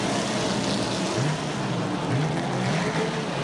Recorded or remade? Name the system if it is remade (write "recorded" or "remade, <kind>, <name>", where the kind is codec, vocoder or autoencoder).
recorded